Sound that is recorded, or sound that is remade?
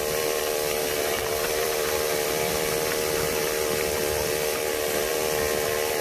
remade